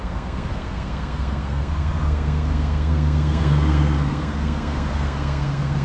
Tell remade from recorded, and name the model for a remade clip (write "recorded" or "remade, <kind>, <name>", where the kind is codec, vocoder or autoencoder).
remade, codec, SNAC